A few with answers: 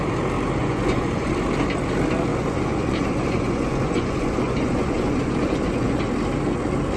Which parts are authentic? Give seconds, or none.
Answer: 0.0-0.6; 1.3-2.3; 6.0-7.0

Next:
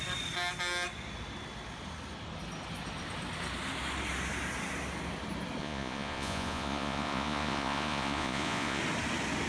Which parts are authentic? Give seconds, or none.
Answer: 0.0-5.6; 8.8-9.5